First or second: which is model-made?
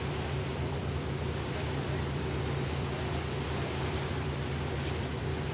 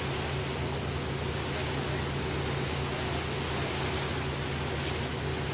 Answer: first